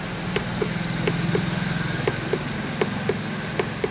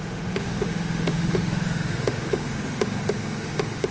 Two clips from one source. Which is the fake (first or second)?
second